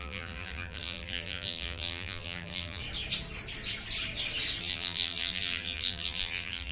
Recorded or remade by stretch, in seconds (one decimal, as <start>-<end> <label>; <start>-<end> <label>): 0.0-2.8 remade; 2.8-4.6 recorded; 4.6-6.7 remade